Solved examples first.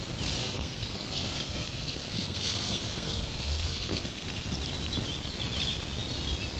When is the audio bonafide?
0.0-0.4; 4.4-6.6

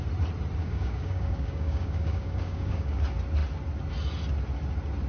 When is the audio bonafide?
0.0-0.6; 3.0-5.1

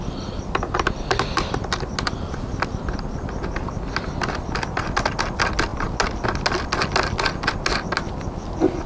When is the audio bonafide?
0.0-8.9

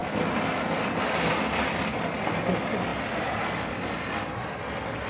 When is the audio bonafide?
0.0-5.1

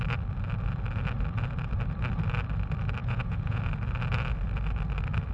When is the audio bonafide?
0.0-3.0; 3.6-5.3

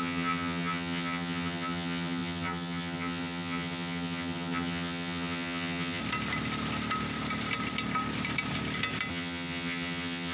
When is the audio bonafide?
6.0-9.1